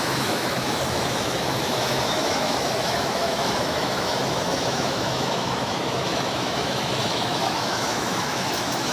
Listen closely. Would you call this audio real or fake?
fake